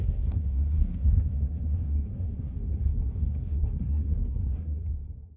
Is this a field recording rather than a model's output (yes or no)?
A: no